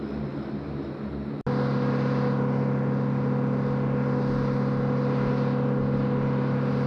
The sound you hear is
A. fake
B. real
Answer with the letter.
B